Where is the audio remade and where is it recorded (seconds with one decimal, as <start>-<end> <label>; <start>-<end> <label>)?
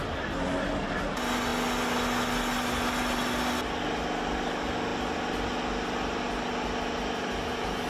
0.0-7.9 recorded